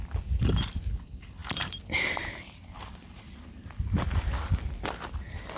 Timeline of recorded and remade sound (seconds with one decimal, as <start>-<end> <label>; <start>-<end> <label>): 0.0-1.4 recorded; 1.4-4.8 remade; 4.8-5.6 recorded